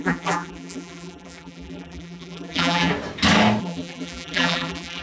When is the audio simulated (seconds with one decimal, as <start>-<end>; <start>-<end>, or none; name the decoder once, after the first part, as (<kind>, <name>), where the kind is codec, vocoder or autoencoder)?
0.0-2.9 (vocoder, BigVGAN v2); 3.6-5.0